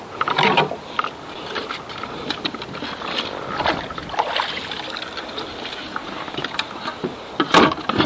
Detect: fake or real real